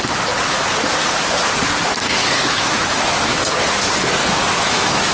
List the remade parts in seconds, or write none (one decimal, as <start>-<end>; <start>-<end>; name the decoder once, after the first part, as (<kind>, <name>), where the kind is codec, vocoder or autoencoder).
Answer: 2.2-3.5 (autoencoder, DAC-VAE); 4.2-5.1

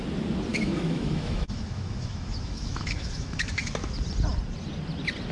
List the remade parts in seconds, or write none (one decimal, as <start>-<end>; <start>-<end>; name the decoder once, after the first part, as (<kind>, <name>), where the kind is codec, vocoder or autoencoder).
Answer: 0.5-3.7 (autoencoder, DAC-VAE)

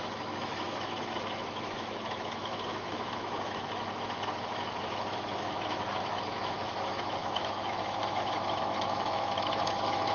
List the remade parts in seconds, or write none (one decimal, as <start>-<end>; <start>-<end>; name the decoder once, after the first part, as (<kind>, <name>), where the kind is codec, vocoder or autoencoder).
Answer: 0.0-10.1 (autoencoder, DAC-VAE)

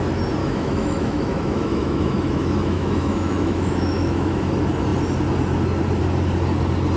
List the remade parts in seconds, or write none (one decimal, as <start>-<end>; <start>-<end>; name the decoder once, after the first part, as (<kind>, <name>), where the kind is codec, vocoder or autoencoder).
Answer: 0.4-4.5 (autoencoder, DAC-VAE)

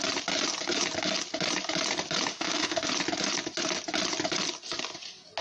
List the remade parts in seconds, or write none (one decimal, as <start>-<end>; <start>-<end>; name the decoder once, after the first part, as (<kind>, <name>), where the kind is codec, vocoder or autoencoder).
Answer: 2.3-2.9 (autoencoder, DAC-VAE)

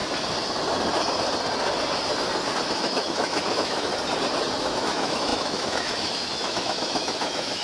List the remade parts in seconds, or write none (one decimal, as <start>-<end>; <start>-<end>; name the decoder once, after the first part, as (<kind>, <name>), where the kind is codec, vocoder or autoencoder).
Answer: 2.7-3.9 (autoencoder, DAC-VAE); 4.6-7.6

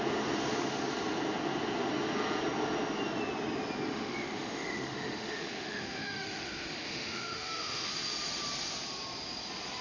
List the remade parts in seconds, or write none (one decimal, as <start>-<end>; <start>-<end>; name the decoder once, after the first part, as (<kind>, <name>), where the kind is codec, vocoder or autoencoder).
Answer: 3.9-7.9 (autoencoder, DAC-VAE)

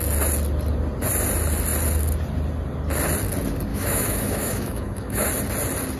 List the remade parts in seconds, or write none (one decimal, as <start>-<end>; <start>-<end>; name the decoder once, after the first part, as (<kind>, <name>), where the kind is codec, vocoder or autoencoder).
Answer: 3.7-5.3 (autoencoder, DAC-VAE)